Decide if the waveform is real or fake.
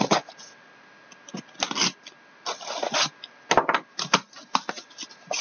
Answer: real